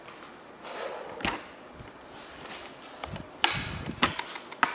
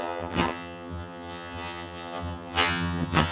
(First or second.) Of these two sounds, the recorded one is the first